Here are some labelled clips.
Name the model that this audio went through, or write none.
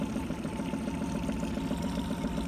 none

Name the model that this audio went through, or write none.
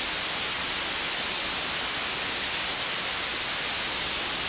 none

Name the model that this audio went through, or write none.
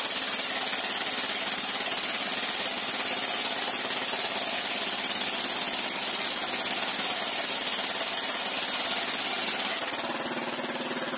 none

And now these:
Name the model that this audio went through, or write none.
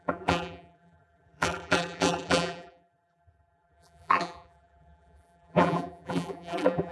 vocoder, BigVGAN v2